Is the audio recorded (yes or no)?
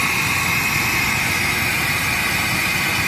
yes